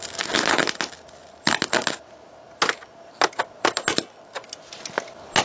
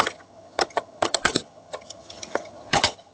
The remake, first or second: second